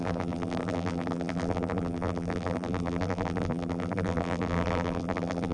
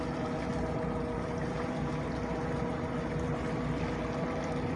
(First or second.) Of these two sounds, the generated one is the first